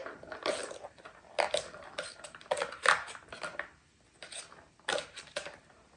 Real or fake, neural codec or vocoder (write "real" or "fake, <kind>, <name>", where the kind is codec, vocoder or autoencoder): real